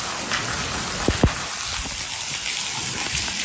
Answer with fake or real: real